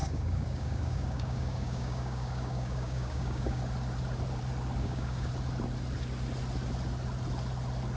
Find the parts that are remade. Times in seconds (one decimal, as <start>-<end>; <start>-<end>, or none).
0.0-3.6; 4.8-5.3